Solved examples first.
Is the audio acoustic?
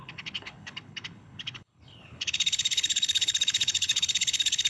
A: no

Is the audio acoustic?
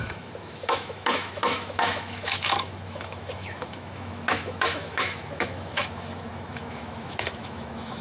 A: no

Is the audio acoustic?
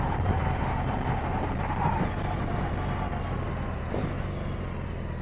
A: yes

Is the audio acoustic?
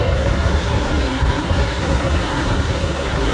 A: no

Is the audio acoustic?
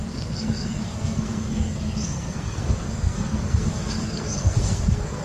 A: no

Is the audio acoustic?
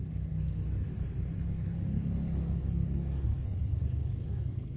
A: no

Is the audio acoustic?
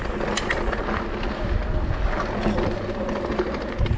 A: yes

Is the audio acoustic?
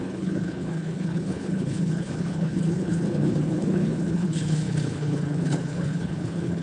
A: no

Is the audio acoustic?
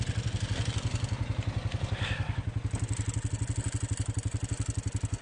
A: yes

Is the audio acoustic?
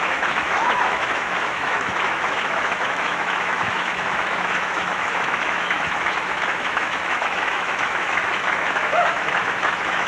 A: no